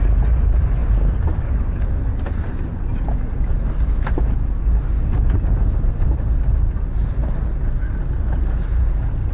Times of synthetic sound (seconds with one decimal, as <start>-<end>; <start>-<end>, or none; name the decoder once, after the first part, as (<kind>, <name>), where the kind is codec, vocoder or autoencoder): 0.0-7.2 (vocoder, BigVGAN v2); 7.8-9.3